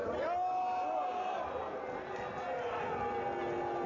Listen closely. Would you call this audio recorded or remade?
recorded